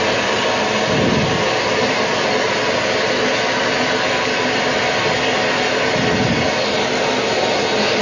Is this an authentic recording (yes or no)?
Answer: yes